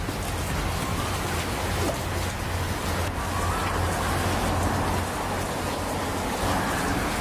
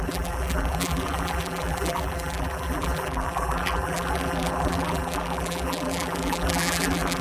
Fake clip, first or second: second